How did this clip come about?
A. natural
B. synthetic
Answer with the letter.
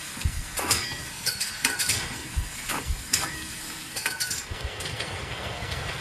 B